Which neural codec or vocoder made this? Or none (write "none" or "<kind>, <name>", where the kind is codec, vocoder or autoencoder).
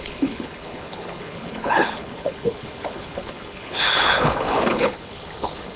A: codec, HILCodec